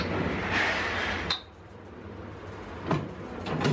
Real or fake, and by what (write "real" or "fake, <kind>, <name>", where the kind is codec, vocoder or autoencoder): fake, vocoder, BigVGAN v2